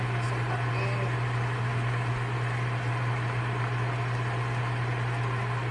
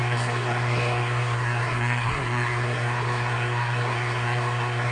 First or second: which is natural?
first